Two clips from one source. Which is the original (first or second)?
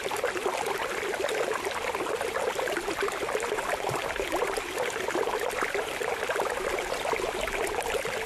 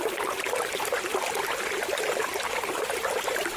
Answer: first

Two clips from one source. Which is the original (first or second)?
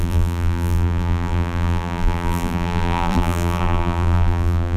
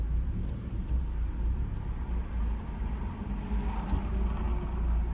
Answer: second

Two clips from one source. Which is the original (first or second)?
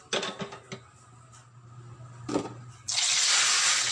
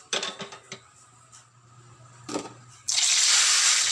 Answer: first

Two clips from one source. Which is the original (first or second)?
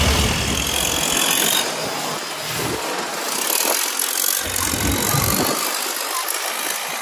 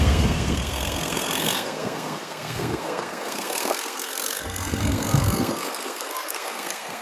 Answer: first